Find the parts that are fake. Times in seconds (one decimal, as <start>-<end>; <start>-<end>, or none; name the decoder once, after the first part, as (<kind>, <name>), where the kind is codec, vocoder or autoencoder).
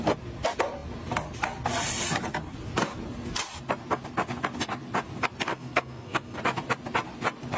5.5-6.4 (codec, SNAC)